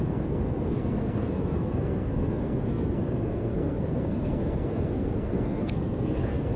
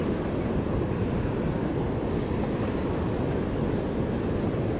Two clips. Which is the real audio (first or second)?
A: second